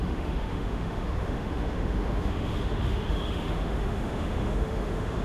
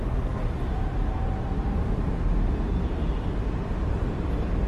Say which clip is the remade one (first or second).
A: first